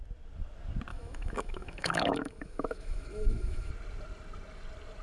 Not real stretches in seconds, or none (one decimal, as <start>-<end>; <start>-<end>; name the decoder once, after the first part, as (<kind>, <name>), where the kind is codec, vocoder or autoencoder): 0.9-3.7 (autoencoder, DAC-VAE)